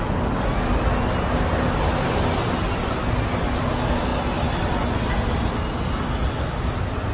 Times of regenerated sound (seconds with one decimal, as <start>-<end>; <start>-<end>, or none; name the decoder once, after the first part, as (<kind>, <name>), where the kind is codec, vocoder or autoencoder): none